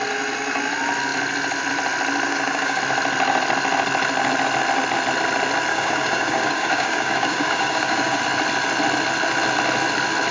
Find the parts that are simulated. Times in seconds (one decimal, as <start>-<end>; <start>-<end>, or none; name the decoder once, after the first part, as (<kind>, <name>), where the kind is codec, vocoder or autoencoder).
2.3-2.8 (codec, DAC); 5.7-8.2